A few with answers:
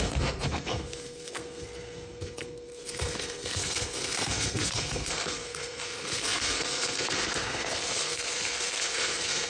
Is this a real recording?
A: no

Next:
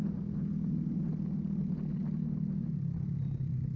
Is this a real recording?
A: yes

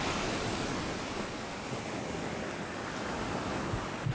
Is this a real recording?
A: no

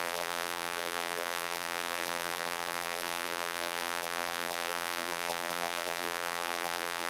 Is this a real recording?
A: no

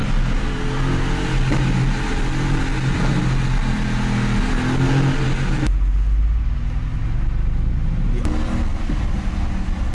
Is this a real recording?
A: yes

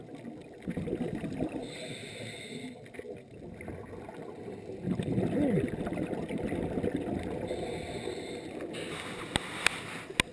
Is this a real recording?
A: yes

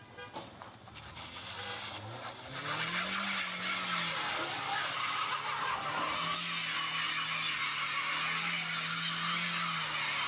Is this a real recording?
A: yes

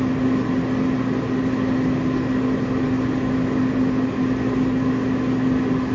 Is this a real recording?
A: yes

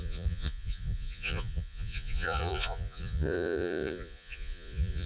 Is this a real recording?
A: no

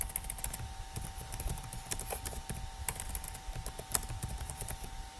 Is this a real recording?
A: yes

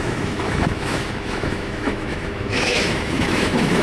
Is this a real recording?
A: no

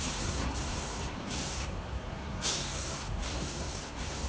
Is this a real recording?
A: no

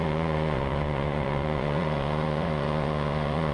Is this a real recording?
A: no